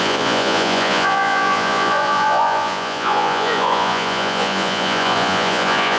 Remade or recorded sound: remade